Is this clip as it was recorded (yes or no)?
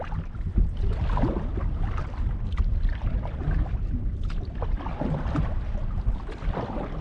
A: yes